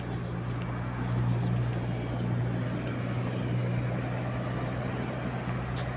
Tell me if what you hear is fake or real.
real